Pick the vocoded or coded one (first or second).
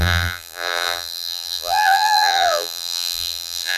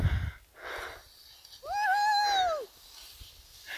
first